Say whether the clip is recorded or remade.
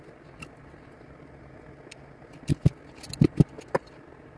recorded